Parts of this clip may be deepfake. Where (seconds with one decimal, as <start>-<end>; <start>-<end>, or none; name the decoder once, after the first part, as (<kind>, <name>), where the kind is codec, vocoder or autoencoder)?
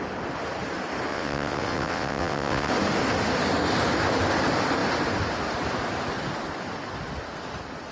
1.1-2.7 (vocoder, WaveNeXt)